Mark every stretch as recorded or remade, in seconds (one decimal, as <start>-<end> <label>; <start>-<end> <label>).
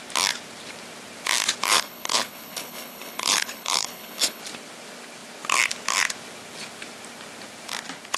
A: 0.0-1.7 recorded; 1.7-4.4 remade; 4.4-8.2 recorded